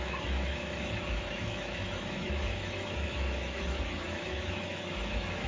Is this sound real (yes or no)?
no